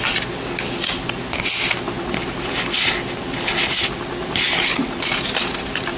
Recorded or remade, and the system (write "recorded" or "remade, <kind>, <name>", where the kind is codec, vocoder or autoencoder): recorded